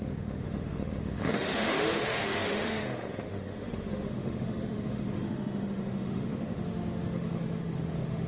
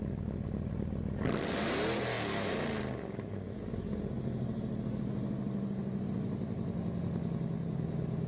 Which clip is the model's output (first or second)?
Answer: first